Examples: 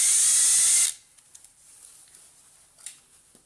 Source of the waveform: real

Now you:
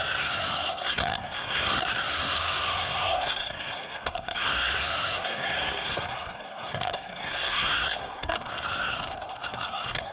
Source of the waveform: fake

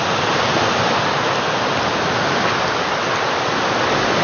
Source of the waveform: real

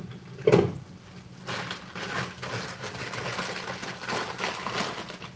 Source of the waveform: real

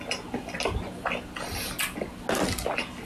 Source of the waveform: real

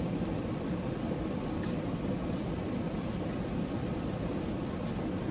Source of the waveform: real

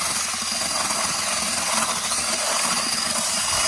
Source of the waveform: real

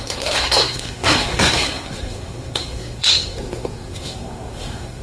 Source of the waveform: fake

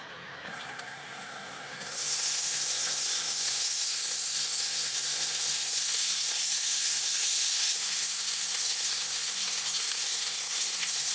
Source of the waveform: fake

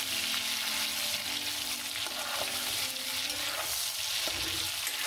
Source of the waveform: real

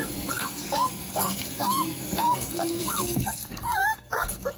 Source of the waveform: fake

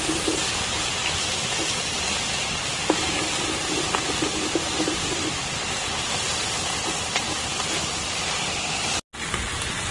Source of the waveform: real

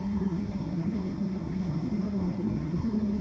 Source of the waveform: fake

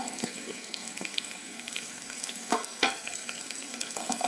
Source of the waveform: fake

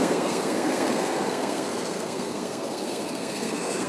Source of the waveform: fake